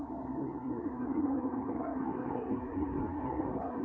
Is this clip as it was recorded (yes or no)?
no